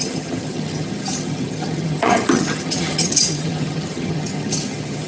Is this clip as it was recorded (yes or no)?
no